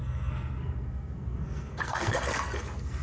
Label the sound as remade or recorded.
remade